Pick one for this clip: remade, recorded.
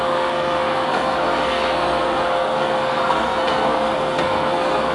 remade